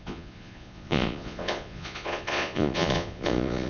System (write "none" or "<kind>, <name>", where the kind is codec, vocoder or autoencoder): vocoder, Vocos